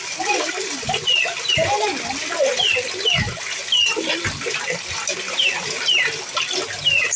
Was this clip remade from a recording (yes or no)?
no